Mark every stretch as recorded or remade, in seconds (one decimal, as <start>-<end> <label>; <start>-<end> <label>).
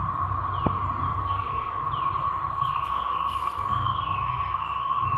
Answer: 0.0-1.1 recorded; 1.1-1.8 remade; 1.8-2.5 recorded; 2.5-5.2 remade